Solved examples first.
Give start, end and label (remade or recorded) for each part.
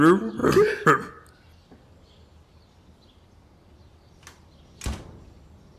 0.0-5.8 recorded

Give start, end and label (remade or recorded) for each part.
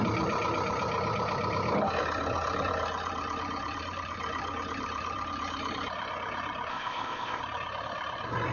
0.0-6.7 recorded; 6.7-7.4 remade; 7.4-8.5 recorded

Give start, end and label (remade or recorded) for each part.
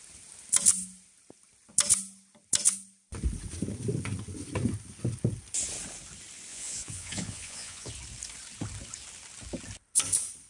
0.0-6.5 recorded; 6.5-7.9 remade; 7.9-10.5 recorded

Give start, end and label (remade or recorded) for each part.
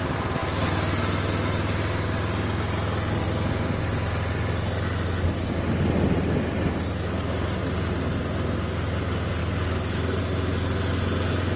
0.0-9.4 recorded; 9.4-10.2 remade; 10.2-11.6 recorded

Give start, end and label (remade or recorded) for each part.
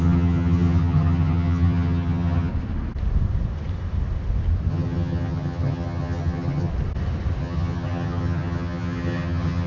0.0-2.5 remade; 2.5-4.7 recorded; 4.7-6.7 remade; 6.7-7.4 recorded; 7.4-9.7 remade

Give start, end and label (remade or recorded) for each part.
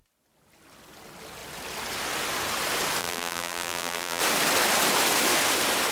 0.0-3.0 recorded; 3.0-4.2 remade; 4.2-5.9 recorded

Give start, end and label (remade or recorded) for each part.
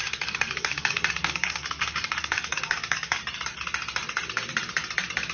0.0-3.2 remade; 3.2-5.3 recorded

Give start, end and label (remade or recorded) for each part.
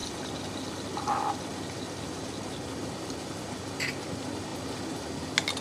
0.0-5.6 recorded